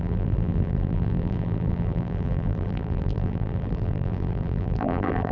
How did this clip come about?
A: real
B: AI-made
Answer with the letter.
B